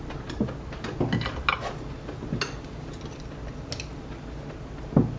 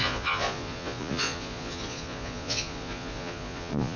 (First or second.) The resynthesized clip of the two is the second